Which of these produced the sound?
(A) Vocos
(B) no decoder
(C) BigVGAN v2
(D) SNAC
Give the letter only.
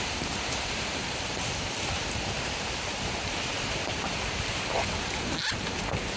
B